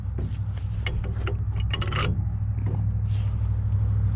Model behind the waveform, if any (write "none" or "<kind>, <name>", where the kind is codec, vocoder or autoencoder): none